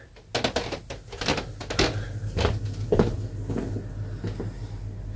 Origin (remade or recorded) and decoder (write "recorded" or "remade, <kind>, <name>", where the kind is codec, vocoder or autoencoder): recorded